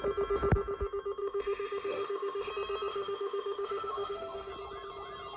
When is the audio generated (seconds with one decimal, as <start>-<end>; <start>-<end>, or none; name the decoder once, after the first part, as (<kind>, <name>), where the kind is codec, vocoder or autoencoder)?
1.2-2.5 (autoencoder, DAC-VAE); 2.9-4.5